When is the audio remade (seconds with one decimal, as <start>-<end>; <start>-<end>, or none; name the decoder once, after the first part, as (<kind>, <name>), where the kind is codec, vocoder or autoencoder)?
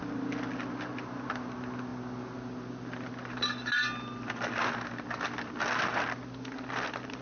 none